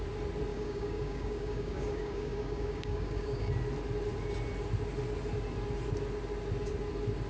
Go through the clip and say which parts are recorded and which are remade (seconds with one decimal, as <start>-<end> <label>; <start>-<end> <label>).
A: 0.0-0.5 recorded; 0.5-3.5 remade; 3.5-7.3 recorded